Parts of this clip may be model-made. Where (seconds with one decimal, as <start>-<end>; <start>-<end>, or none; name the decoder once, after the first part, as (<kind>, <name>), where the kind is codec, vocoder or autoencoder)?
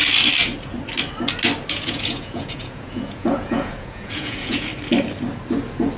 1.7-4.7 (vocoder, Vocos)